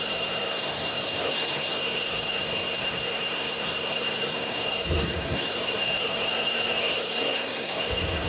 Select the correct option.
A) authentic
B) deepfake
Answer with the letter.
B